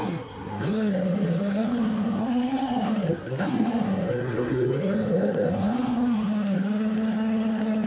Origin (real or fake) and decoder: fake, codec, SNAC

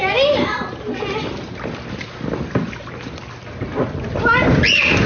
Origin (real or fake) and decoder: real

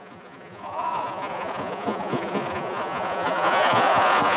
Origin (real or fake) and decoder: fake, vocoder, Vocos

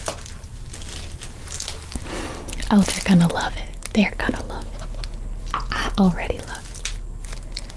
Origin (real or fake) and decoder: real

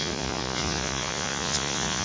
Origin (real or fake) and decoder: fake, vocoder, Vocos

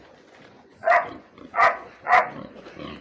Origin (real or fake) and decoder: fake, vocoder, Vocos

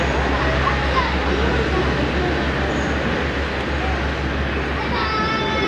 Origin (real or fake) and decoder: real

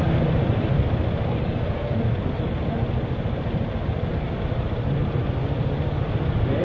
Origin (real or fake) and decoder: real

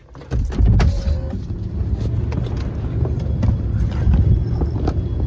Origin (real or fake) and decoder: real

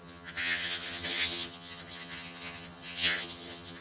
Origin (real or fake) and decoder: fake, vocoder, HiFi-GAN